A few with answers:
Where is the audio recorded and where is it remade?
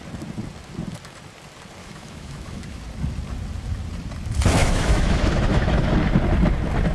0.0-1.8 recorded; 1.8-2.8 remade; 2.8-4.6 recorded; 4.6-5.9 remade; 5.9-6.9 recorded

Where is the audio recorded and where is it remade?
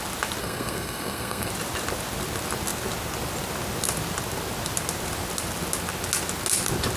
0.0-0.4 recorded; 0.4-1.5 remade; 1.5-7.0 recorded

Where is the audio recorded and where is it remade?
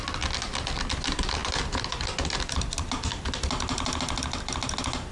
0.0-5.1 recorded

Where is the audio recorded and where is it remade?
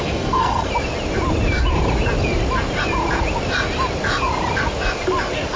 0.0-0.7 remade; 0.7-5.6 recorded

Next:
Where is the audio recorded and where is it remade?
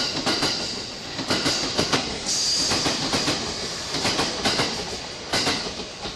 0.0-1.7 recorded; 1.7-2.3 remade; 2.3-6.2 recorded